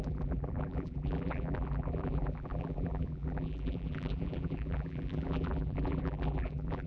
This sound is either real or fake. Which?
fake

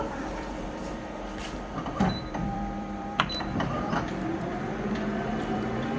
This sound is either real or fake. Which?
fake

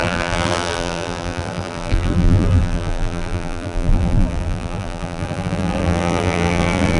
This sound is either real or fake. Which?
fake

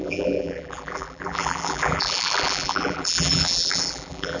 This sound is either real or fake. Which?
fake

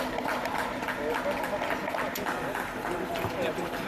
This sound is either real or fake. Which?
real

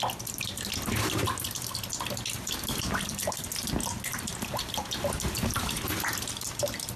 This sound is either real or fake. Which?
real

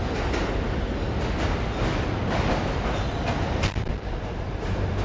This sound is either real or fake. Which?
real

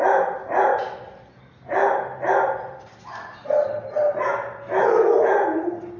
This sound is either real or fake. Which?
real